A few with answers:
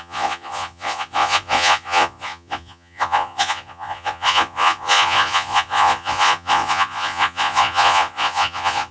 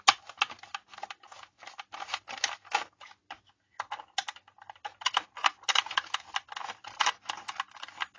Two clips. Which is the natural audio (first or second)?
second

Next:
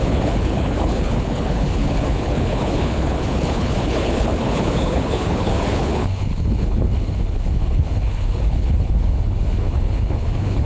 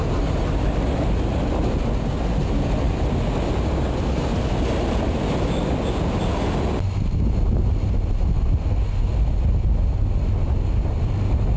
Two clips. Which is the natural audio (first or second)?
second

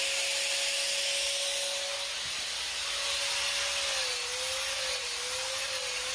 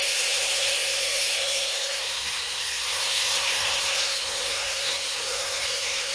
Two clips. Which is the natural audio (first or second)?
first